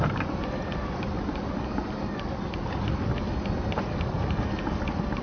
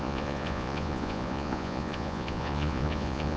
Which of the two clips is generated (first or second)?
second